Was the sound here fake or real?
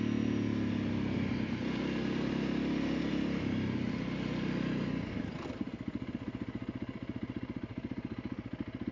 real